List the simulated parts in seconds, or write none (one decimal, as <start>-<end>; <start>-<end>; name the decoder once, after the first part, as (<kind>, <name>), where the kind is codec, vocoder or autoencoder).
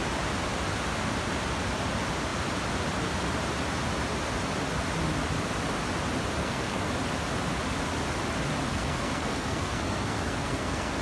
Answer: 6.4-6.9 (codec, SNAC); 8.7-11.0